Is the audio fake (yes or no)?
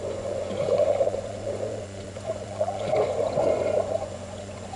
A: yes